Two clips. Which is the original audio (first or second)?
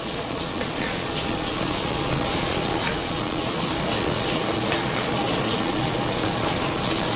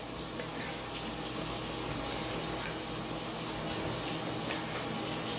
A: second